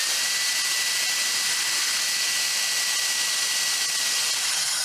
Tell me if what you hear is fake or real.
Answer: real